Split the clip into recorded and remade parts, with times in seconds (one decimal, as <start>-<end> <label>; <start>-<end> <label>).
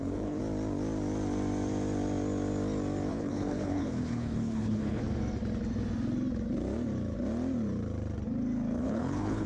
0.0-0.4 remade; 0.4-3.1 recorded; 3.1-5.0 remade; 5.0-8.8 recorded; 8.8-9.5 remade